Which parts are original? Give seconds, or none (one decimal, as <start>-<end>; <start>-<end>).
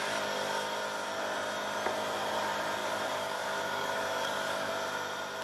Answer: 0.0-2.8; 4.7-5.4